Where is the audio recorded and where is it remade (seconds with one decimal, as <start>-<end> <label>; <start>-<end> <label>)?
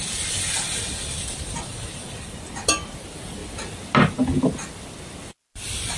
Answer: 0.0-6.0 recorded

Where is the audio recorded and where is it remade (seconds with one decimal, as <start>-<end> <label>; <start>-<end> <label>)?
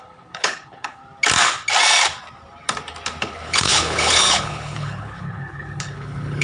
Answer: 0.0-1.0 remade; 1.0-3.2 recorded; 3.2-6.4 remade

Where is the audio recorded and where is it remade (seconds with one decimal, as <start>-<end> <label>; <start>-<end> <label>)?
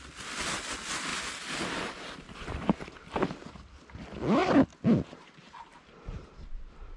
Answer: 0.0-7.0 recorded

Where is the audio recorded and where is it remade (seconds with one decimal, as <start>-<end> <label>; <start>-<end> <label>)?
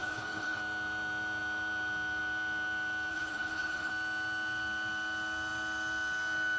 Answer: 0.0-0.6 remade; 0.6-3.1 recorded; 3.1-3.9 remade; 3.9-6.6 recorded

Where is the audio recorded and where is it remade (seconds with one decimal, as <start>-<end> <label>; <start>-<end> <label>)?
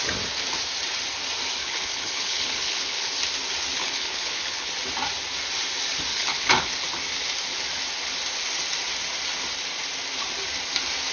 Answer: 0.0-1.6 recorded; 1.6-3.2 remade; 3.2-3.8 recorded; 3.8-4.7 remade; 4.7-6.1 recorded; 6.1-6.7 remade; 6.7-11.1 recorded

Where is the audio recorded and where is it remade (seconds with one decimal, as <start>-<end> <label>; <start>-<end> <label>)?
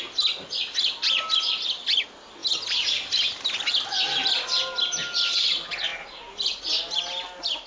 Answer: 0.0-7.7 recorded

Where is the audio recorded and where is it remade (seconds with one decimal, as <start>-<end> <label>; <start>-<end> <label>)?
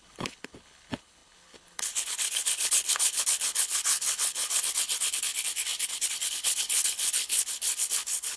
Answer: 0.0-8.4 remade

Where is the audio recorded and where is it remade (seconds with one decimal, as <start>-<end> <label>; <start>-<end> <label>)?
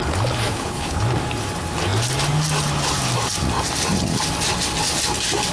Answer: 0.0-0.5 recorded; 0.5-1.0 remade; 1.0-5.5 recorded